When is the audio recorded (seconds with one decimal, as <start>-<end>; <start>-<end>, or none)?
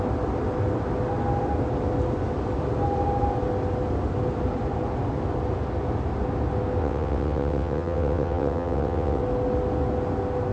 0.0-6.8; 9.2-10.5